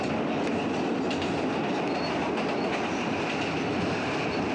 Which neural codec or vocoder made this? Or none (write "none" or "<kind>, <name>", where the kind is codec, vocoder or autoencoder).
none